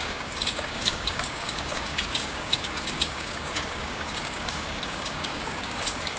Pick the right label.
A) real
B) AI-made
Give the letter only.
B